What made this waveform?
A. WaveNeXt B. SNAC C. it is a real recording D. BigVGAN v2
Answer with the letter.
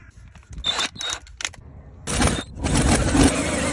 C